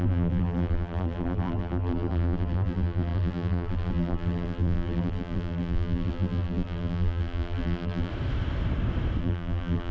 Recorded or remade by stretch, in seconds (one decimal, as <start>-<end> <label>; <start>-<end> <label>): 0.0-8.1 remade; 8.1-9.2 recorded; 9.2-9.9 remade